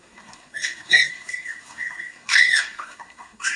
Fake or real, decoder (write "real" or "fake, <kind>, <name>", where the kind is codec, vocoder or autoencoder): fake, codec, SNAC